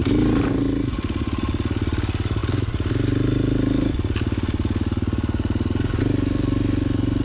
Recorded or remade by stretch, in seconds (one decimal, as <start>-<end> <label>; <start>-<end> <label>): 0.0-7.2 recorded